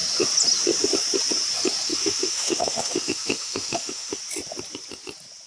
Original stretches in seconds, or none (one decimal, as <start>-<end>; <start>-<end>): 0.0-1.9; 4.2-5.5